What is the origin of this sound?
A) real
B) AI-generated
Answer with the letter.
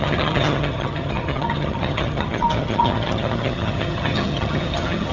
B